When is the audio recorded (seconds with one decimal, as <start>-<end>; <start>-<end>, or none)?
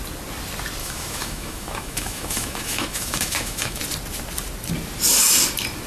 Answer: 0.0-0.8; 3.8-5.9